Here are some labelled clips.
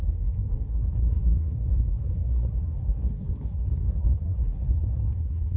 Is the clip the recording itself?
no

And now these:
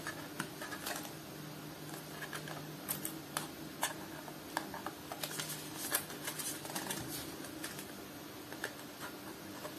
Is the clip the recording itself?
yes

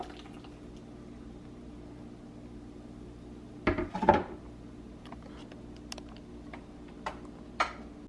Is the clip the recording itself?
yes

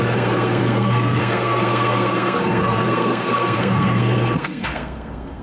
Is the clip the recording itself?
no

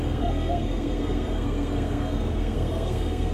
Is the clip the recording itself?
no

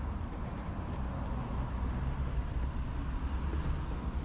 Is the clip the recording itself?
yes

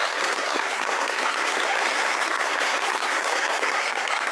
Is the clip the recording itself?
no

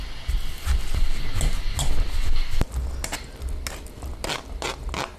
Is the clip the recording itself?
yes